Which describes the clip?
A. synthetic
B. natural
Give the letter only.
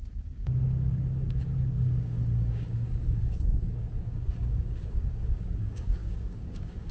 A